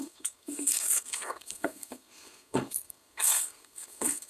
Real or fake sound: fake